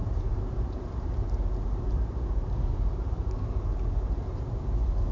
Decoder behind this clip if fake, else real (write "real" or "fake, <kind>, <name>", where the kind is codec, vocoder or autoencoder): fake, vocoder, BigVGAN v2